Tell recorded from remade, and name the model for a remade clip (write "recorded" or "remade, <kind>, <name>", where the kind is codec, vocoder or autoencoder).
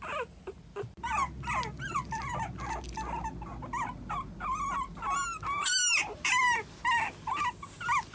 recorded